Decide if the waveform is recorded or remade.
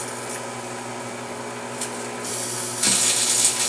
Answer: recorded